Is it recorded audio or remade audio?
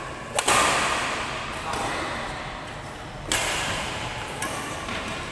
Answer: recorded